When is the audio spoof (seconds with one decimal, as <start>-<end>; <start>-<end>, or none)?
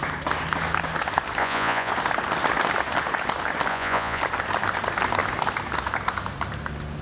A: 1.4-1.9; 3.7-4.2